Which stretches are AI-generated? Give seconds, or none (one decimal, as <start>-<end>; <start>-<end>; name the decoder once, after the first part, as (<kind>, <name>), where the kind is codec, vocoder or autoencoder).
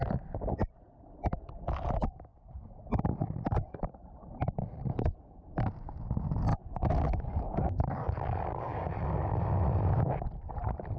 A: 6.5-8.9 (codec, DAC)